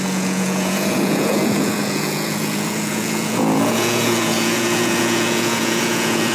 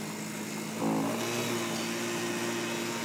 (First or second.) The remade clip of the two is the first